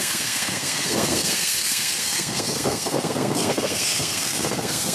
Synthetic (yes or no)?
yes